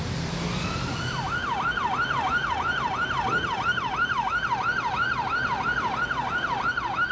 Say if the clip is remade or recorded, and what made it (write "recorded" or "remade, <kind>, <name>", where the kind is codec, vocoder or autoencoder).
recorded